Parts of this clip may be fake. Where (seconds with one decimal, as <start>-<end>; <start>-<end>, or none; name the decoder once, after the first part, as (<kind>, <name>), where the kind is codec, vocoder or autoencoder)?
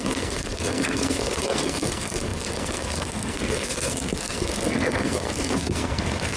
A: 0.0-6.4 (codec, SNAC)